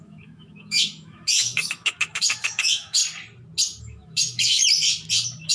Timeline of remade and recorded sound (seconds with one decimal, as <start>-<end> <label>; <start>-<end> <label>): 0.0-3.0 remade; 3.0-3.8 recorded; 3.8-4.6 remade; 4.6-5.5 recorded